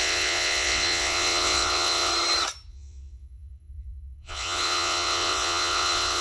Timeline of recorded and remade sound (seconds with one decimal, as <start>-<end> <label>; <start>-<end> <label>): 0.0-2.1 remade; 2.1-2.7 recorded; 2.7-6.2 remade